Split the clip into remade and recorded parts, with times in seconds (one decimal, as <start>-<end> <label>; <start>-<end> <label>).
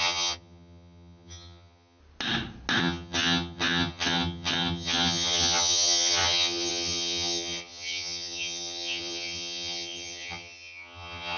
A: 0.0-2.0 remade; 2.0-2.8 recorded; 2.8-11.4 remade